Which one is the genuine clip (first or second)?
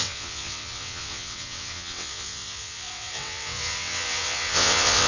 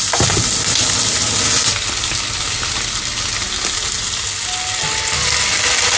second